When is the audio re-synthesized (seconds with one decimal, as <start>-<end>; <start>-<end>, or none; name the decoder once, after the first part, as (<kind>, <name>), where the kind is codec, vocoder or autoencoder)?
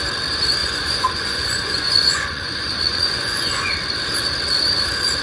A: 0.6-3.7 (vocoder, Vocos)